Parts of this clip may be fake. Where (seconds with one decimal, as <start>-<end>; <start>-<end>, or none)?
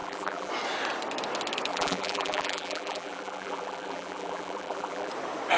0.0-0.5; 1.7-5.1